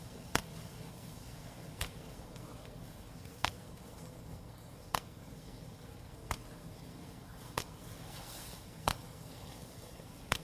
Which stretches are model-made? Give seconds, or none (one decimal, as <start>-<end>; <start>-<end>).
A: 0.0-10.4